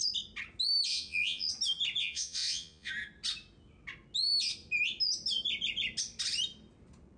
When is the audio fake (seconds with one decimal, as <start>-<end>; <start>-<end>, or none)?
0.9-1.5; 2.0-2.9